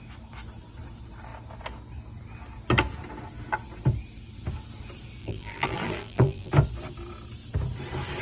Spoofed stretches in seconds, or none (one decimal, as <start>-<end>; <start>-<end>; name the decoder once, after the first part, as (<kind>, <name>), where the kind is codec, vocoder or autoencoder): 5.2-6.5 (vocoder, BigVGAN v2)